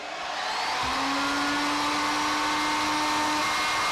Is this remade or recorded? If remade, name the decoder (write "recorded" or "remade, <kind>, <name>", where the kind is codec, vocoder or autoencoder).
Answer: recorded